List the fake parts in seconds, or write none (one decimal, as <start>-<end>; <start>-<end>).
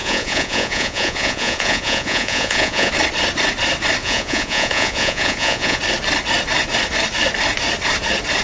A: 0.0-2.9; 4.0-5.8